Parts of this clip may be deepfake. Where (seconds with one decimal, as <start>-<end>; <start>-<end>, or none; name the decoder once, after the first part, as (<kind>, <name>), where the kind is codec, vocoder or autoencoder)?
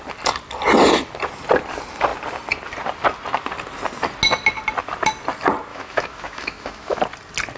5.7-7.0 (autoencoder, DAC-VAE)